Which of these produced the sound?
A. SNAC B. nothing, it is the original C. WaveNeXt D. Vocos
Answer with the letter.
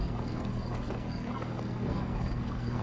A